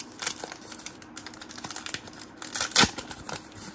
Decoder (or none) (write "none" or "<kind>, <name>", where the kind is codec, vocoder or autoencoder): none